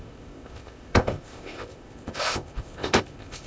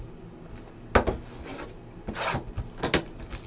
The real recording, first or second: second